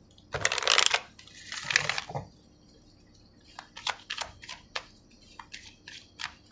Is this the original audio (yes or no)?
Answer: yes